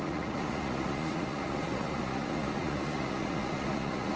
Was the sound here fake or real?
fake